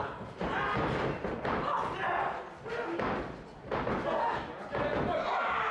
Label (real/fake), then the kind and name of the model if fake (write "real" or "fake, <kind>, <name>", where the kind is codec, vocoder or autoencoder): real